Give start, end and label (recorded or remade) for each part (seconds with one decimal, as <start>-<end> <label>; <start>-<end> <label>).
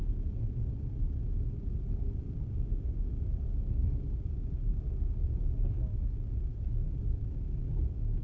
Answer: 0.0-2.5 recorded; 2.5-3.1 remade; 3.1-8.2 recorded